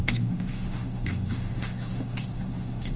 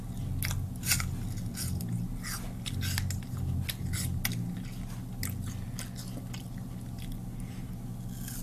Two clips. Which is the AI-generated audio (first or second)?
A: first